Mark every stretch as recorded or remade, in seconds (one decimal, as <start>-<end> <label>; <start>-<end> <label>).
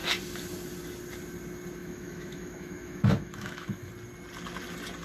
0.0-1.8 recorded; 1.8-3.9 remade; 3.9-5.0 recorded